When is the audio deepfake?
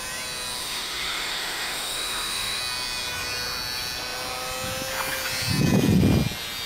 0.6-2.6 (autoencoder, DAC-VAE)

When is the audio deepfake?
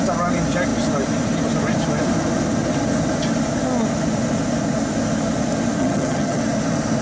5.8-6.4 (vocoder, HiFi-GAN)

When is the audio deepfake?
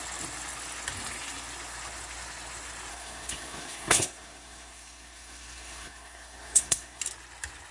2.9-7.0 (codec, SNAC)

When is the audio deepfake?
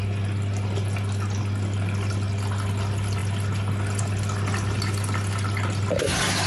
none